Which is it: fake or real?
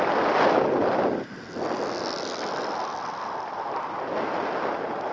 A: real